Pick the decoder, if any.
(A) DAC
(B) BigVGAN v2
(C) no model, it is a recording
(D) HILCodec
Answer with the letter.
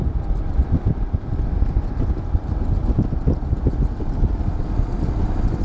C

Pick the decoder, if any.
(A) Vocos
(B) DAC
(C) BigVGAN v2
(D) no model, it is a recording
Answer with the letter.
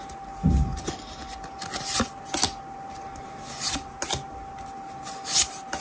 D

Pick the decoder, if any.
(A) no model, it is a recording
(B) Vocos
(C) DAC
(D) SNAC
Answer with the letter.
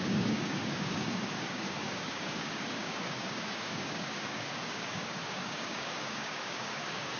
C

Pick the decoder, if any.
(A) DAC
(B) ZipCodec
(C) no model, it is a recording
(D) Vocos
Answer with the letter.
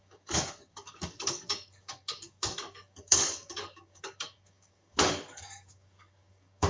A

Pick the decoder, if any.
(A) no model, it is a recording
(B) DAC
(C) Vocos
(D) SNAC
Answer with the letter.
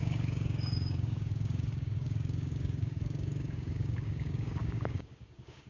B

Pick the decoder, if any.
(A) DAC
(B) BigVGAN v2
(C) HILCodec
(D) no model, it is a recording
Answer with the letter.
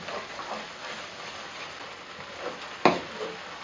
D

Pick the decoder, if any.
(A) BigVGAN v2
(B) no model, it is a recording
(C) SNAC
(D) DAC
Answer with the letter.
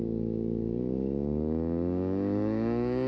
D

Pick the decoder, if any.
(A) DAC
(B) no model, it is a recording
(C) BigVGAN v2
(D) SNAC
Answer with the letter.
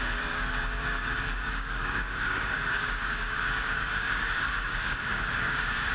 A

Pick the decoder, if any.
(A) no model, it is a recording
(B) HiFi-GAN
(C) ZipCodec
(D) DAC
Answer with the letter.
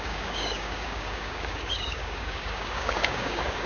D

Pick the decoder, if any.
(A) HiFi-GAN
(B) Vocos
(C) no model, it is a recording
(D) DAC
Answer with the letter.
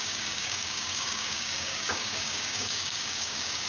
D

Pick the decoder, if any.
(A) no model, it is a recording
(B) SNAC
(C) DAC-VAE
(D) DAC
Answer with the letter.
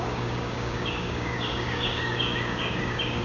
D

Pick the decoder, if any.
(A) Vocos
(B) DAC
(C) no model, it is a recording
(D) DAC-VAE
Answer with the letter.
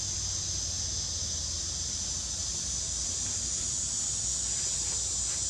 C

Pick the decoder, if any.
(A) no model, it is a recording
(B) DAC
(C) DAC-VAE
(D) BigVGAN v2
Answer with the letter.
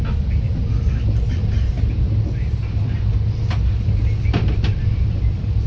A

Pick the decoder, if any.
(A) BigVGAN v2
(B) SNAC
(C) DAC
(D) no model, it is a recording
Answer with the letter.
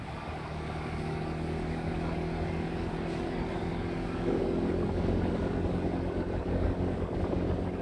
C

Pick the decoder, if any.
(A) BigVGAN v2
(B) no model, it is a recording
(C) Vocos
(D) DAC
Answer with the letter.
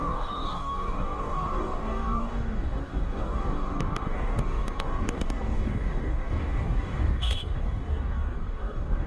D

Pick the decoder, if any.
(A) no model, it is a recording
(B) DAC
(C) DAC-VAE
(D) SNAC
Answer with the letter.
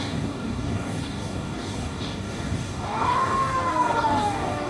B